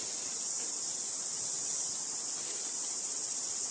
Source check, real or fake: real